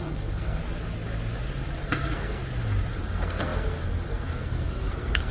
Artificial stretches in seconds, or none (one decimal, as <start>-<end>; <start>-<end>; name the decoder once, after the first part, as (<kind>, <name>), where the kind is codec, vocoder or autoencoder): 0.0-0.6 (codec, SNAC); 1.8-2.4; 2.9-5.3

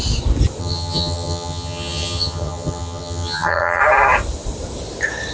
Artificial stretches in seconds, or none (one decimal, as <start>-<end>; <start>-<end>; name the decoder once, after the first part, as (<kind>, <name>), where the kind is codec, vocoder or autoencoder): 0.6-3.8 (vocoder, HiFi-GAN)

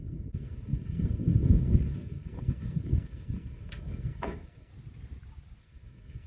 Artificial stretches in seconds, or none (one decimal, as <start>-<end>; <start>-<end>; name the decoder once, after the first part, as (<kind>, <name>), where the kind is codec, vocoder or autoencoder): 0.0-4.7 (codec, SNAC); 5.6-6.3

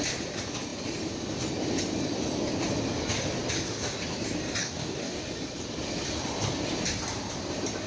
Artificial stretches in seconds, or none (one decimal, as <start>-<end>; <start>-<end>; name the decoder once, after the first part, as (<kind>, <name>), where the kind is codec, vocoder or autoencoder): 4.6-5.2 (codec, DAC)

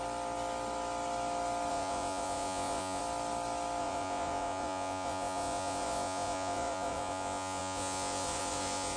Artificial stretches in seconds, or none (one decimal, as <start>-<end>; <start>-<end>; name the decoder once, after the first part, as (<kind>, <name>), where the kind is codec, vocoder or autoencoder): 1.7-3.0 (vocoder, Vocos); 3.8-9.0

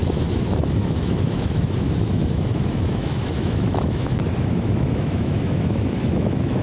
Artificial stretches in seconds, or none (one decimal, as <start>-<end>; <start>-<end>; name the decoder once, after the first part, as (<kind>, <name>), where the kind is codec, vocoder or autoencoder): 0.0-6.6 (autoencoder, DAC-VAE)

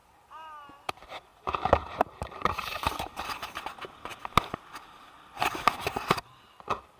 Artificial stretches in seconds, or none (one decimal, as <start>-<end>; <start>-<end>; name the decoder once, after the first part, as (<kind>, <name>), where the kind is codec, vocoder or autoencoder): 0.0-0.9 (vocoder, BigVGAN v2); 1.3-3.6

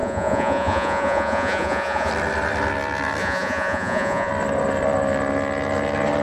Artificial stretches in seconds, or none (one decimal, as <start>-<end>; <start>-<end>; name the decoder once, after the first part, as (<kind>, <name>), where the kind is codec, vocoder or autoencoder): 0.0-2.1 (vocoder, Vocos); 3.2-4.3